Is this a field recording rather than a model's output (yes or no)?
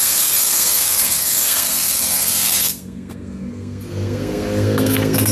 no